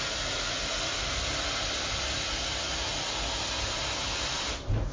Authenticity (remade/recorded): recorded